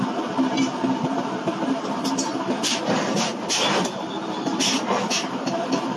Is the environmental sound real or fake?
fake